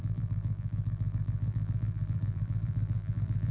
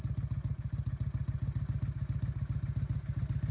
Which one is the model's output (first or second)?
first